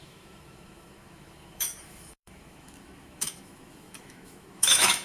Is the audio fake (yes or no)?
yes